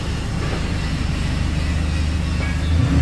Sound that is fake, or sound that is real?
real